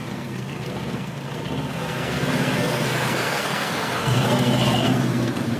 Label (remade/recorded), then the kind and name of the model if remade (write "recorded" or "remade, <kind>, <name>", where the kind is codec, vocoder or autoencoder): remade, codec, SNAC